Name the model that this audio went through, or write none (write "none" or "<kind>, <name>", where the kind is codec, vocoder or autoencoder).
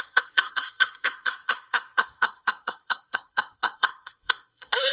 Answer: codec, SNAC